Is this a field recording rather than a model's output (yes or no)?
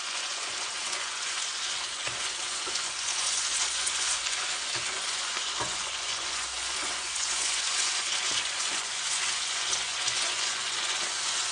no